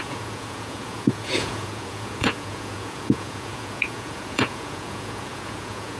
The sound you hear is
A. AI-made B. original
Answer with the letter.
A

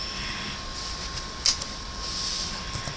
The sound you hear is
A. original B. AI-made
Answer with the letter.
A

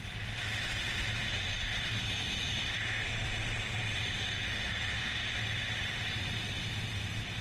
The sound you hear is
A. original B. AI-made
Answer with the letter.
A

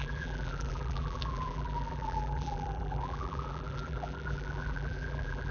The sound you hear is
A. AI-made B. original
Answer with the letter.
A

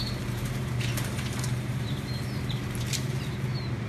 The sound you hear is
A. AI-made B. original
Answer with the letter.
A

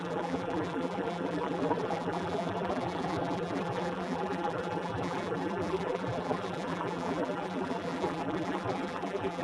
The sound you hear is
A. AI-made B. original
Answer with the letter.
A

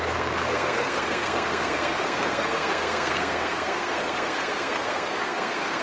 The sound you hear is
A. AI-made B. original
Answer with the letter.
A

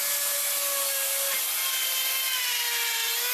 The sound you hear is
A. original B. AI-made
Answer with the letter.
A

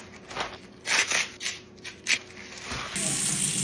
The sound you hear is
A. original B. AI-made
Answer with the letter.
A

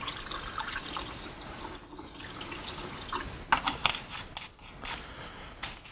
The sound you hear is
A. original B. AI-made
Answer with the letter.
A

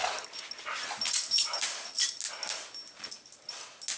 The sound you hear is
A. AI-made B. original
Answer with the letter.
B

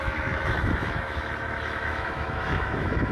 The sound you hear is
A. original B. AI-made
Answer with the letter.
B